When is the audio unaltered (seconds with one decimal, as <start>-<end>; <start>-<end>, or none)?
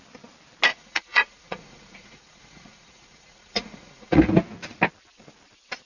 0.0-0.7; 4.2-5.9